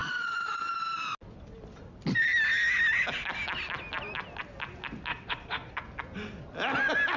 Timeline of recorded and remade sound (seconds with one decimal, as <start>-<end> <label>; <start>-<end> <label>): 0.0-0.6 remade; 0.6-5.1 recorded; 5.1-5.8 remade; 5.8-7.2 recorded